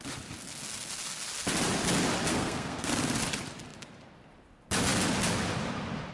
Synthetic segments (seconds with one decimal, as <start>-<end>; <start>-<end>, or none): 2.3-2.9

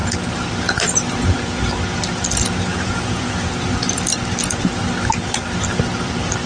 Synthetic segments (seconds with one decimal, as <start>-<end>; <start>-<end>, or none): 2.7-3.5

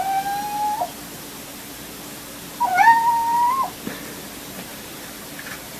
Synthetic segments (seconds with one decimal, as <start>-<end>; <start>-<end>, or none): 4.7-5.8

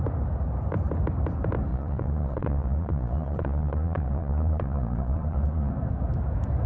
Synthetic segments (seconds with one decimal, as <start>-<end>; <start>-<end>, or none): 1.7-5.7

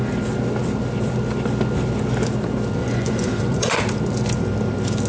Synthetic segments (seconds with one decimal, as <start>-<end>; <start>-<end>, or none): 2.8-3.8

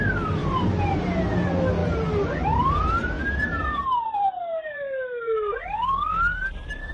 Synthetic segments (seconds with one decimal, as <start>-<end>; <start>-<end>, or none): none

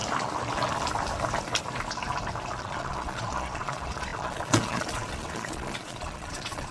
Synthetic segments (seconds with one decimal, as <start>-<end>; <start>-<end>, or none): 2.6-6.7

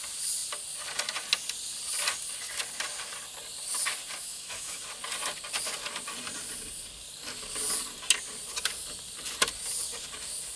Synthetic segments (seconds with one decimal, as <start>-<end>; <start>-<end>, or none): 4.2-4.8